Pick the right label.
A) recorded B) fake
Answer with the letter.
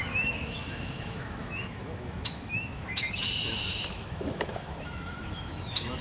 B